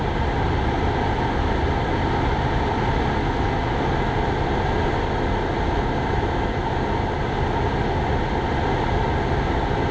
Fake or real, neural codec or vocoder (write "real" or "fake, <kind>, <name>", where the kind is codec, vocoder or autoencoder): real